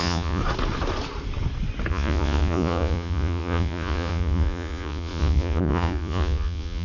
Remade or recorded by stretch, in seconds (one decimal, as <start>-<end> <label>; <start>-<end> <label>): 0.0-0.4 remade; 0.4-1.9 recorded; 1.9-6.8 remade